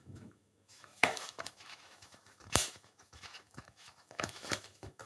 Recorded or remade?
remade